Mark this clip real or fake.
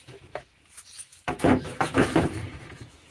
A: fake